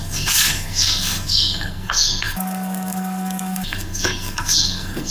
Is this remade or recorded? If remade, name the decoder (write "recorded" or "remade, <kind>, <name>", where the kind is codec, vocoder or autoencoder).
remade, codec, SNAC